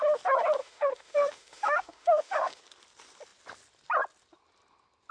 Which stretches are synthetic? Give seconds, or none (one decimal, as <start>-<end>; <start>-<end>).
0.6-2.6